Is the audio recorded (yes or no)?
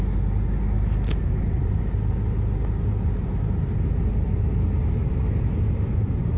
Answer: yes